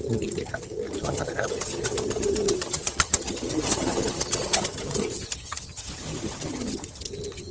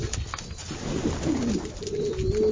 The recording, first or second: second